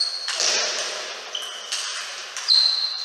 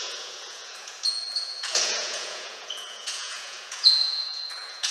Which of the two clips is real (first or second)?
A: first